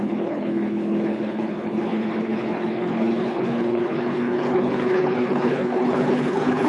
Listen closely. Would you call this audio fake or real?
fake